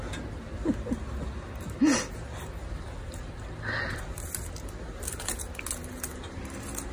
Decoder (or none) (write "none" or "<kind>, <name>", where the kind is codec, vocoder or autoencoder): none